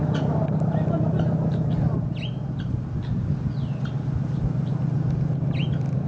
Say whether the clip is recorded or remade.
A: recorded